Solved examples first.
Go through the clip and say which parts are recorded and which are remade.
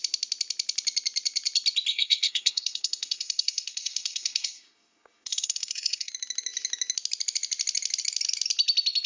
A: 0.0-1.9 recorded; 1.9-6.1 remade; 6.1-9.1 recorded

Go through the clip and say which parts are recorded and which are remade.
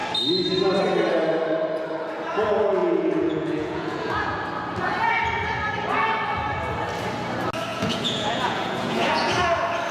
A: 0.0-2.8 recorded; 2.8-4.4 remade; 4.4-7.7 recorded; 7.7-9.3 remade; 9.3-9.9 recorded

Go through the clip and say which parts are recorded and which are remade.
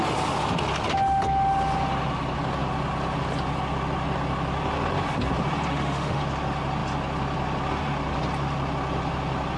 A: 0.0-5.7 recorded; 5.7-6.2 remade; 6.2-9.6 recorded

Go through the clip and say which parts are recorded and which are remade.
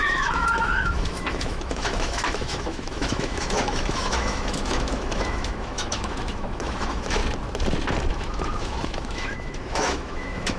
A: 0.0-7.2 remade; 7.2-8.1 recorded; 8.1-10.6 remade